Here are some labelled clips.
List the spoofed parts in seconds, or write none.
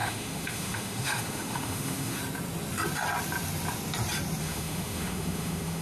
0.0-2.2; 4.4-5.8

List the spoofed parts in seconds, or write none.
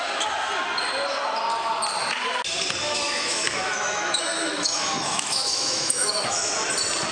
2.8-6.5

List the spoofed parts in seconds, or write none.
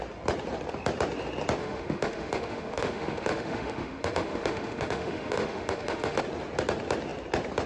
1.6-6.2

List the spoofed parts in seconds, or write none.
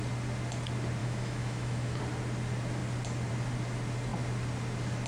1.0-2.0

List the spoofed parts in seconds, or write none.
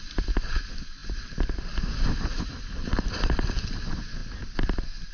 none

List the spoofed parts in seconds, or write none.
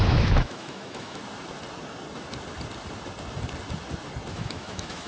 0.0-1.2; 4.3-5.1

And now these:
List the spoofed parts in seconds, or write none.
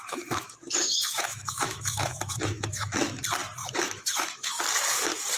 0.0-3.2; 3.6-4.6